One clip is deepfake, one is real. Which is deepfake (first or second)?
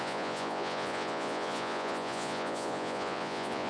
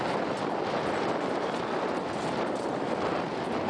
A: first